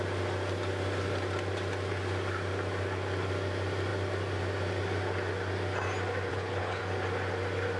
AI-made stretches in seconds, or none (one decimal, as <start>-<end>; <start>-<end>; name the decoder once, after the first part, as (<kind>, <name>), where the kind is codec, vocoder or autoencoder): 6.3-6.8 (codec, HILCodec)